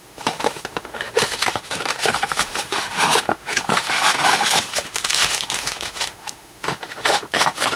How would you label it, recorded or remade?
remade